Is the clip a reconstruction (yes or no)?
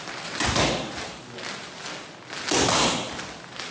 no